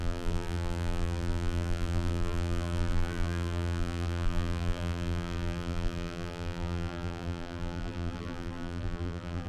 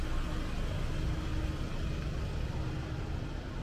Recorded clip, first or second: second